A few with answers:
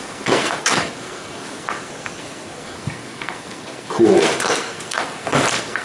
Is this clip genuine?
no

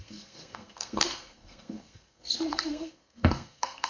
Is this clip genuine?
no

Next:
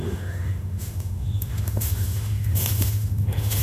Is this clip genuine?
no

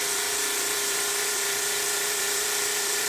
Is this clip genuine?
no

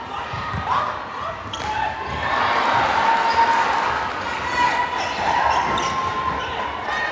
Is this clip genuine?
yes